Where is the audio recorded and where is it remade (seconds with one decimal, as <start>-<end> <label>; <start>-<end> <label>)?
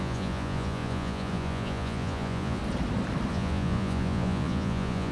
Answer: 0.0-2.6 remade; 2.6-3.3 recorded; 3.3-5.1 remade